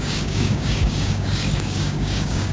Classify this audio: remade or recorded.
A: remade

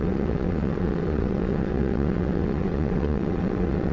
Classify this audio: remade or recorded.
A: remade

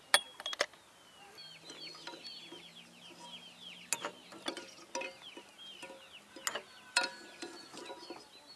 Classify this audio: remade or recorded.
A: recorded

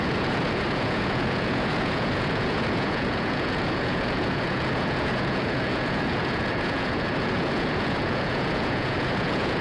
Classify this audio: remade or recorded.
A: remade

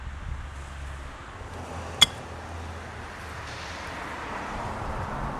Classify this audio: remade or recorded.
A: recorded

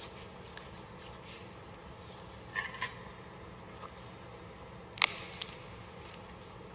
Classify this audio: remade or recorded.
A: recorded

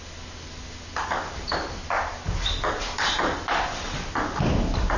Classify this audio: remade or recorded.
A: recorded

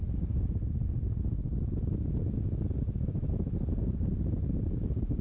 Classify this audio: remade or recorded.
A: recorded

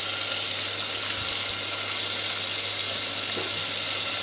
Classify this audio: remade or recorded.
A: recorded